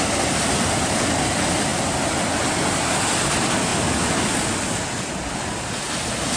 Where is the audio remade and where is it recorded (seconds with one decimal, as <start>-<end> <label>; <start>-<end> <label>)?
0.0-6.4 recorded